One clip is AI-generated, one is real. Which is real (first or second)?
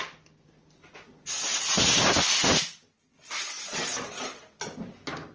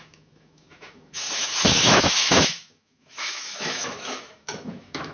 first